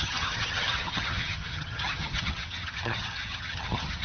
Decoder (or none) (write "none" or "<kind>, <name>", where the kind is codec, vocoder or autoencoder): vocoder, HiFi-GAN